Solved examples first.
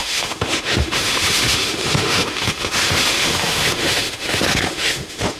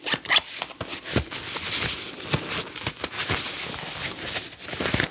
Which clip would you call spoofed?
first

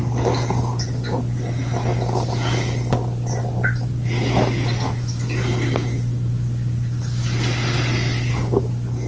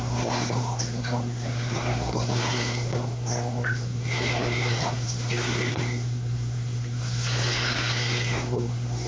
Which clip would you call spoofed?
second